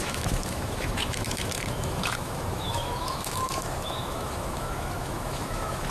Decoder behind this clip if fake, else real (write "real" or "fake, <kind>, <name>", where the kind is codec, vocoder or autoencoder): fake, autoencoder, DAC-VAE